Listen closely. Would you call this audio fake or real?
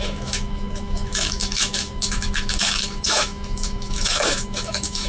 fake